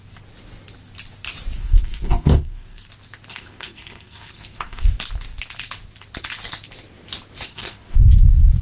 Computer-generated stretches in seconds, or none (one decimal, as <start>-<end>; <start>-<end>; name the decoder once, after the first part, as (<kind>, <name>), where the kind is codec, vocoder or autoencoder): 1.6-2.9 (codec, SNAC); 3.3-4.9; 7.5-8.1